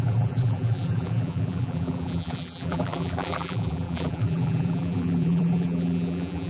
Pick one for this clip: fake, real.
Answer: fake